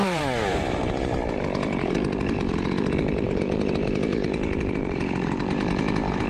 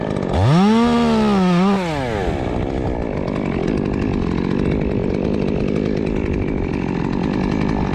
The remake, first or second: first